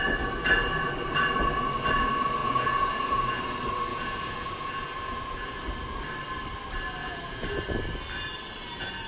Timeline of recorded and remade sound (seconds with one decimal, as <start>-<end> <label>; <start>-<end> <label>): 0.0-2.4 recorded; 2.4-3.4 remade; 3.4-3.9 recorded; 3.9-5.6 remade; 5.6-7.0 recorded; 7.0-7.7 remade; 7.7-9.1 recorded